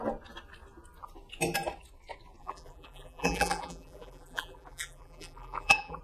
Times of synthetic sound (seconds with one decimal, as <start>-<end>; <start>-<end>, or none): 2.4-6.0